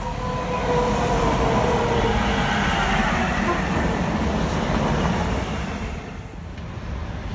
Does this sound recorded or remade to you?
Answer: recorded